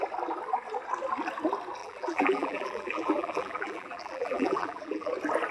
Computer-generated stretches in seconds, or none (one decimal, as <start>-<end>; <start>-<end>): 1.8-5.1